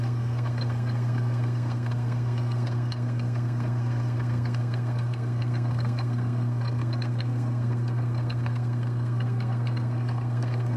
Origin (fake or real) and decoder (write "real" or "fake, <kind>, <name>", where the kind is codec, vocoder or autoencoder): fake, codec, SNAC